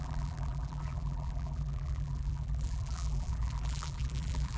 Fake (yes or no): yes